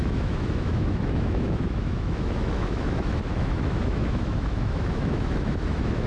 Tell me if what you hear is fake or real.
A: fake